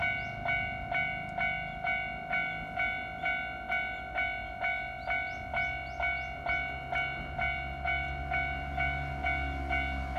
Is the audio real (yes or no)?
yes